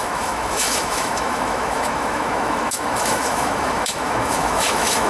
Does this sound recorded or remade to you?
remade